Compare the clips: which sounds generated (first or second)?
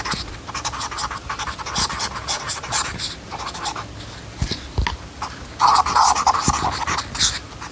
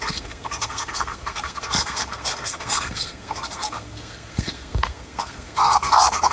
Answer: second